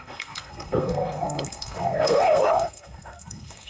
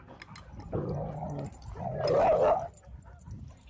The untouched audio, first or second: second